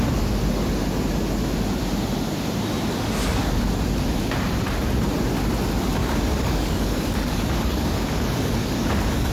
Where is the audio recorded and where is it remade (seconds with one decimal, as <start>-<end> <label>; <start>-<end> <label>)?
0.0-6.0 recorded; 6.0-9.3 remade